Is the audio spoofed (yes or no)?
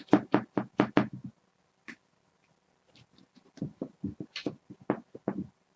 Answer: no